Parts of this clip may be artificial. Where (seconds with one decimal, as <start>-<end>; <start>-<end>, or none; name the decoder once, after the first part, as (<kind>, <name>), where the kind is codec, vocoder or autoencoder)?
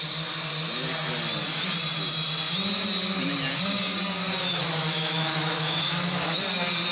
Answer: 4.4-6.4 (autoencoder, DAC-VAE)